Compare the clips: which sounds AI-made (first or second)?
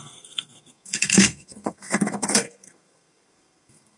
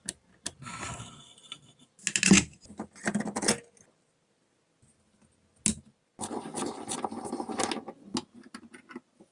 first